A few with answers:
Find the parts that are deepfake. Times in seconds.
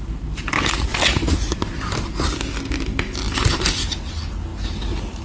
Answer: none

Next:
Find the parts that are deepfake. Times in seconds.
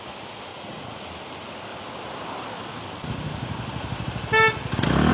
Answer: 0.5-1.0 (vocoder, Vocos)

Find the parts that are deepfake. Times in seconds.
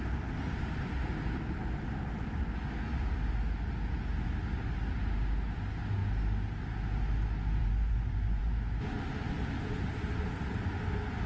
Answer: 7.6-8.4 (vocoder, Vocos)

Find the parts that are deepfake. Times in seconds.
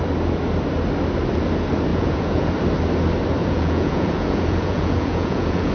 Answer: 1.9-2.5 (vocoder, Vocos); 3.4-5.7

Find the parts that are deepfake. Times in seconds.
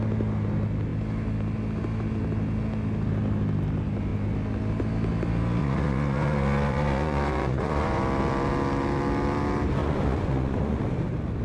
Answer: 5.6-8.0 (vocoder, Vocos); 9.8-10.8